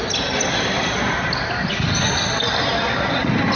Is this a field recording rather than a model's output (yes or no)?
yes